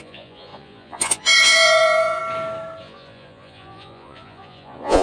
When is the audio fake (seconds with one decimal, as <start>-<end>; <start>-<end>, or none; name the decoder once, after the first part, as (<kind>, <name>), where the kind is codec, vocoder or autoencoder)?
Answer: 0.0-2.2 (vocoder, Vocos); 2.8-5.0